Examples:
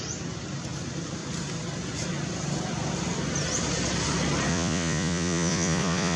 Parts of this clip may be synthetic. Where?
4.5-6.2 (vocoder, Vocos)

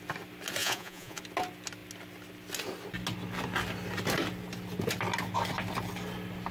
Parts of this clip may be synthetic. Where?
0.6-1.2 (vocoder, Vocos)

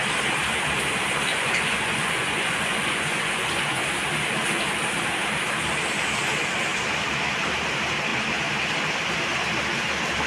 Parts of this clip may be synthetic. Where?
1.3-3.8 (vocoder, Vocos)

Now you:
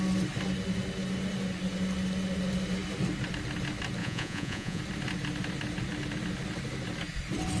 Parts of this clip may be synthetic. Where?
4.0-4.8 (vocoder, Vocos)

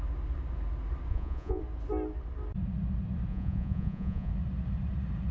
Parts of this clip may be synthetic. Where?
1.1-1.6 (vocoder, Vocos); 3.3-4.3